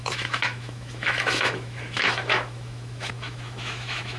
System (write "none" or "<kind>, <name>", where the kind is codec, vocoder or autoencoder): autoencoder, DAC-VAE